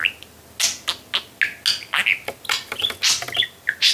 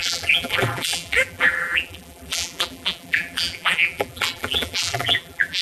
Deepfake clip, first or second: second